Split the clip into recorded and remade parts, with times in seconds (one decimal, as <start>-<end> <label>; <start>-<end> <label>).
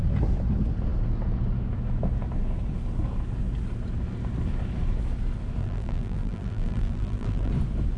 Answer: 0.0-5.6 recorded; 5.6-7.5 remade; 7.5-8.0 recorded